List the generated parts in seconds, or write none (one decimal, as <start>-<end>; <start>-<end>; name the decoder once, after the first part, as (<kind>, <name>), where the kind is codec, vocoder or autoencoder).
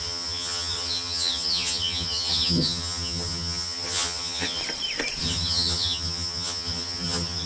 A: 0.0-4.6 (vocoder, HiFi-GAN); 5.2-7.5